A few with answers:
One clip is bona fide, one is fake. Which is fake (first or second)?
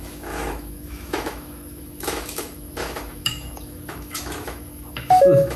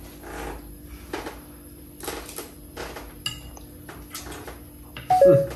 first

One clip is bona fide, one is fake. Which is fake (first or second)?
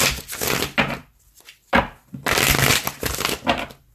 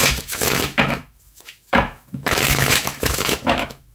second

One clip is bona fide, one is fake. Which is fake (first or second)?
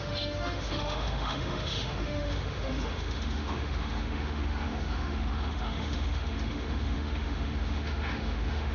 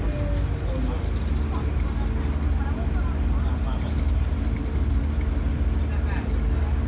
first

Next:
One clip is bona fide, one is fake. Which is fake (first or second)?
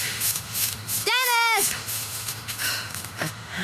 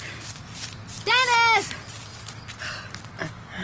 first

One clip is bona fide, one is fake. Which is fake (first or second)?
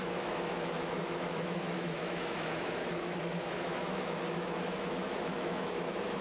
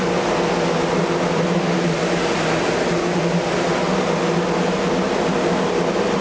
first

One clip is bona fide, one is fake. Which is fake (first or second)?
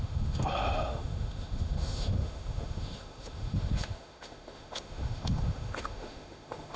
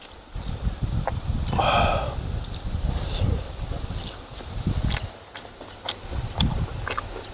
first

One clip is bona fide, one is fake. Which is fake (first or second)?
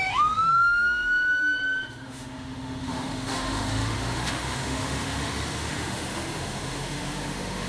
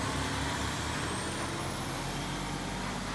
first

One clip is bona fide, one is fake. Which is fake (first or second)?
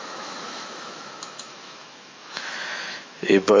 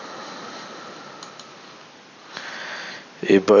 first